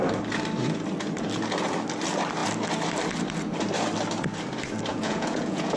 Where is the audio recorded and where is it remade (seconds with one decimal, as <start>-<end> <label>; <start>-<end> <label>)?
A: 0.0-4.9 recorded; 4.9-5.8 remade

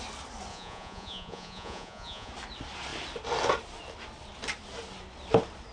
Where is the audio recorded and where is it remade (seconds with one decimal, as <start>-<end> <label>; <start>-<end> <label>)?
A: 0.0-0.5 recorded; 0.5-2.3 remade; 2.3-5.7 recorded

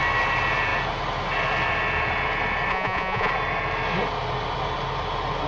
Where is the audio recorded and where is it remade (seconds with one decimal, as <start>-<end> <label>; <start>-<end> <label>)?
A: 0.0-2.7 recorded; 2.7-3.3 remade; 3.3-5.5 recorded